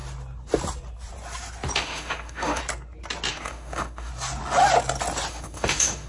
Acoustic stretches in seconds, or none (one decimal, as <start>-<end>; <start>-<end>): 0.0-1.8; 2.6-3.3; 4.1-5.3